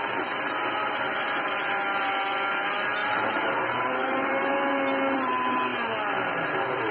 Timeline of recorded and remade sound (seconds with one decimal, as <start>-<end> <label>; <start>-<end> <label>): 0.0-3.0 recorded; 3.0-4.3 remade; 4.3-6.9 recorded

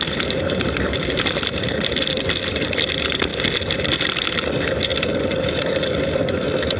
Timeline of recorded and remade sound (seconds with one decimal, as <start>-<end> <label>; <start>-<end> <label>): 0.0-3.3 remade; 3.3-4.3 recorded; 4.3-4.9 remade; 4.9-5.6 recorded; 5.6-6.8 remade

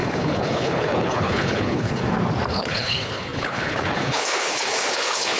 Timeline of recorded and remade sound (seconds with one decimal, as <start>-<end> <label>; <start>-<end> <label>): 0.0-2.0 remade; 2.0-2.5 recorded; 2.5-5.4 remade